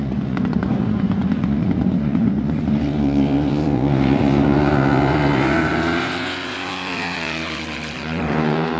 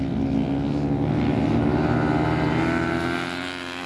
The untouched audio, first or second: second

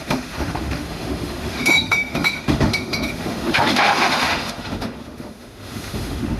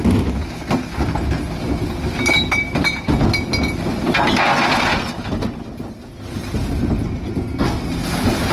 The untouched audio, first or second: second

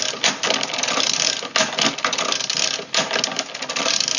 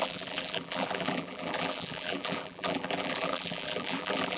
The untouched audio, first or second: first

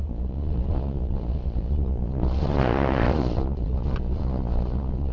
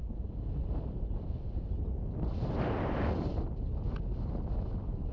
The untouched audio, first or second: second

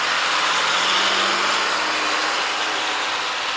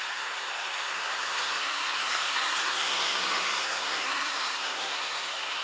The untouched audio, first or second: first